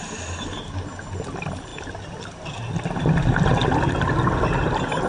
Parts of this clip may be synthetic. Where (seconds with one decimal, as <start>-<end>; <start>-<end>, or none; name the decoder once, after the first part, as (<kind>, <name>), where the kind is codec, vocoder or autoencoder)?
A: none